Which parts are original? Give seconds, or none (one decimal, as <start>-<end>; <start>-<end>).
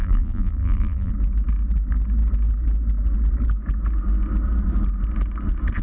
1.1-5.8